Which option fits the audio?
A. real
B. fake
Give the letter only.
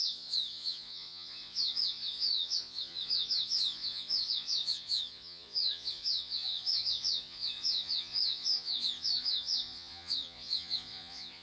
B